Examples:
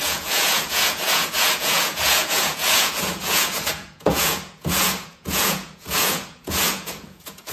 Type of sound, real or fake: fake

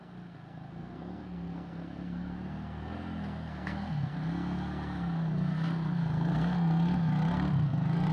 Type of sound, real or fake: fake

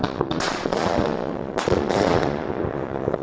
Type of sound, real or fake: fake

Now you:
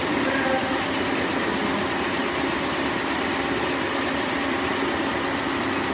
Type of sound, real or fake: real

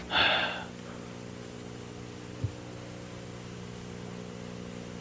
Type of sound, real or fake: real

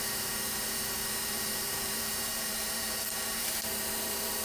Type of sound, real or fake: fake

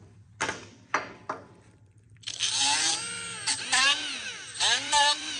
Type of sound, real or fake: fake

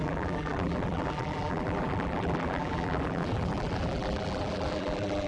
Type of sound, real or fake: fake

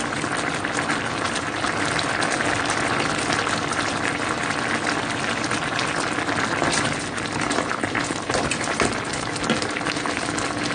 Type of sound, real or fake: real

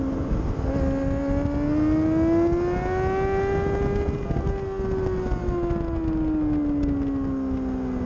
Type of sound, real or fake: real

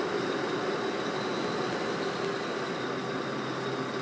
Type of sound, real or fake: real